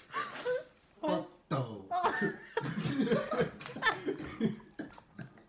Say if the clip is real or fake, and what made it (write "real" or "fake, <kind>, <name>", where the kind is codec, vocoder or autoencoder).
real